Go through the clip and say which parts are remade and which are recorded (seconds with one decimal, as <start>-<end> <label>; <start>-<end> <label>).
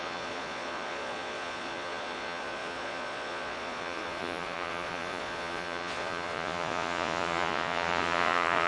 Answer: 0.0-8.7 remade